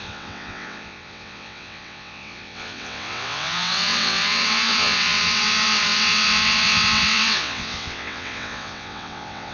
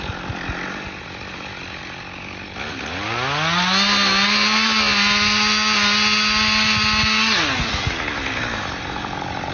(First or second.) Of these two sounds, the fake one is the first